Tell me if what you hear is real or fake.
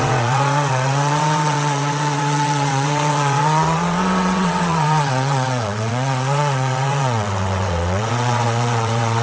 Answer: fake